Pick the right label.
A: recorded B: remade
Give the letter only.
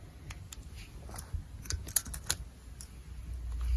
A